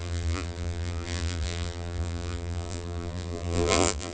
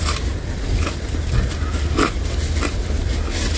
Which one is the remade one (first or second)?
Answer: first